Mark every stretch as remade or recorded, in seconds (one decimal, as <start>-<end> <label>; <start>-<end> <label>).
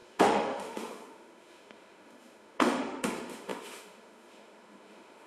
0.0-5.3 remade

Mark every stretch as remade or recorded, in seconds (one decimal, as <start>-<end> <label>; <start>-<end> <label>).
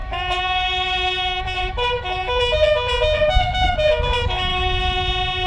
0.0-2.5 remade; 2.5-4.5 recorded; 4.5-5.1 remade; 5.1-5.5 recorded